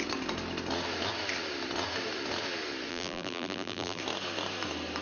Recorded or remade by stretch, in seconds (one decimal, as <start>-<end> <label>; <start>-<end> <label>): 0.0-2.9 recorded; 2.9-4.0 remade; 4.0-5.0 recorded